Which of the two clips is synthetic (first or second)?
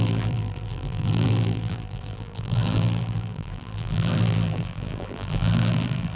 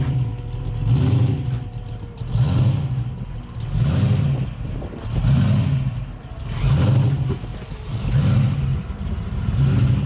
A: first